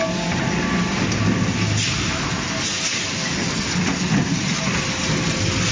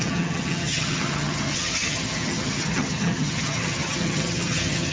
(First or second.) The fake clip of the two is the second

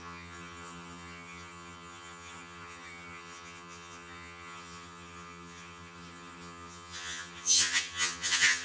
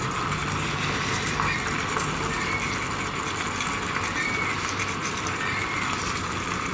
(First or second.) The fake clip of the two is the first